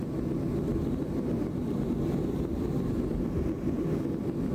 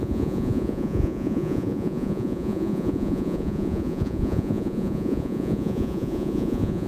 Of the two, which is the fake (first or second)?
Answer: second